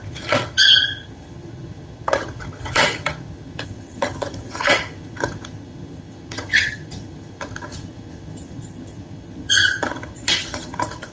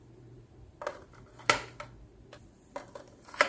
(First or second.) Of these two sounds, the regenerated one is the first